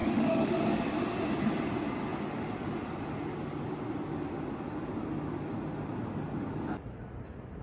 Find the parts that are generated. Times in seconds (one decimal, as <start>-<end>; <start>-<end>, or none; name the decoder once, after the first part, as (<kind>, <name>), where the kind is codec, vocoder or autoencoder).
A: 0.0-0.6 (autoencoder, DAC-VAE)